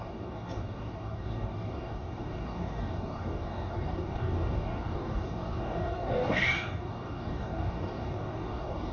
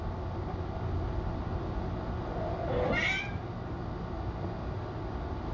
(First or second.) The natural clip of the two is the second